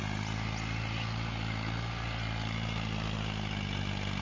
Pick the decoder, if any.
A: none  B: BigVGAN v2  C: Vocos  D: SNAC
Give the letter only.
A